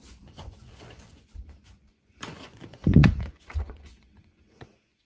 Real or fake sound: fake